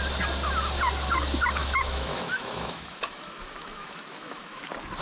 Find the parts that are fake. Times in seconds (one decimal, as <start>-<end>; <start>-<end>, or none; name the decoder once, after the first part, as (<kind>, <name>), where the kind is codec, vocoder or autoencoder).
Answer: 1.6-4.6 (autoencoder, DAC-VAE)